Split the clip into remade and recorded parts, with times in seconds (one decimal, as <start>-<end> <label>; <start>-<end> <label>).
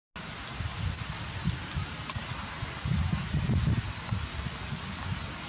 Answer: 0.0-5.5 recorded